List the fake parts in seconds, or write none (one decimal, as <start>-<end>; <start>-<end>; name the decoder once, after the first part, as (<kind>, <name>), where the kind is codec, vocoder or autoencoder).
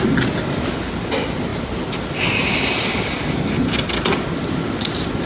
none